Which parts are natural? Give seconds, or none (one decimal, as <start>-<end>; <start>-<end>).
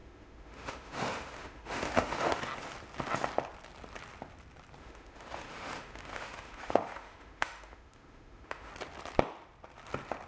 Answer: 2.4-4.8; 8.7-10.3